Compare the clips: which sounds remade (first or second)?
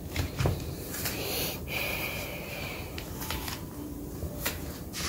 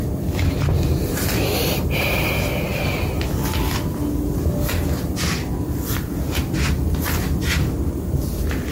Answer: first